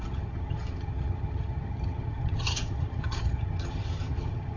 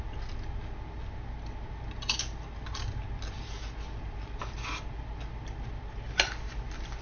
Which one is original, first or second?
second